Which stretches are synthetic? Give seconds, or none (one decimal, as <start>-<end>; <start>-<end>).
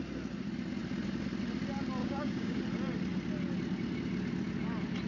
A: 2.0-2.6